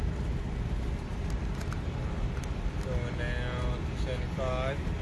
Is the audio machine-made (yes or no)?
no